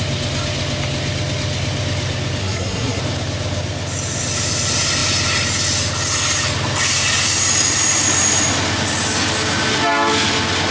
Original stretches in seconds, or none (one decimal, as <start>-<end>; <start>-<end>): 0.0-2.4; 3.0-10.7